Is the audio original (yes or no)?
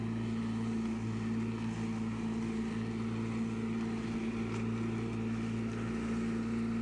yes